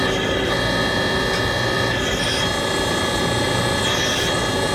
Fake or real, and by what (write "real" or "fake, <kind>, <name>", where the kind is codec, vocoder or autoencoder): real